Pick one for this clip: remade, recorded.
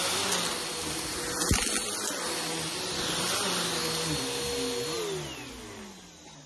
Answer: recorded